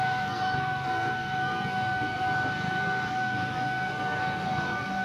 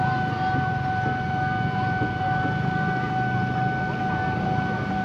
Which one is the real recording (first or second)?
second